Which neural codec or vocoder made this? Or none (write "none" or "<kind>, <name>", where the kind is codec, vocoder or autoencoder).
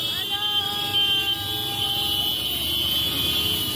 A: none